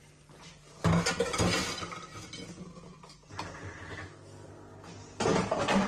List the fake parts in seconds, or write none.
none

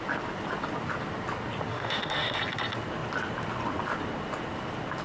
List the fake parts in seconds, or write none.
1.7-2.4 (autoencoder, DAC-VAE)

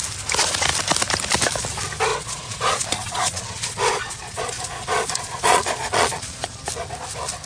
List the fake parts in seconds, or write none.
2.1-6.6 (vocoder, Vocos)

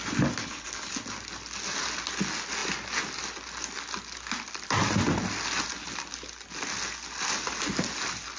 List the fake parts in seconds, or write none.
0.4-0.9 (codec, HILCodec)

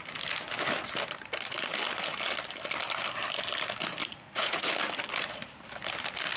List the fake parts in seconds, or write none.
4.0-4.7 (vocoder, Vocos)